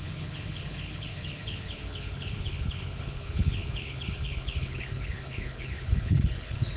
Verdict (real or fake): fake